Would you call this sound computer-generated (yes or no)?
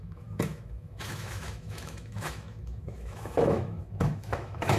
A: yes